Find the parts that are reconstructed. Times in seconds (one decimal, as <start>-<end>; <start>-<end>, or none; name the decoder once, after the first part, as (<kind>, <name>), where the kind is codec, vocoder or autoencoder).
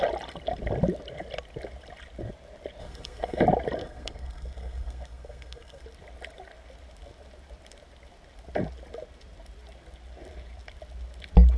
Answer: 2.8-3.4 (codec, SNAC); 3.8-5.8